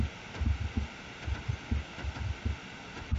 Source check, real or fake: real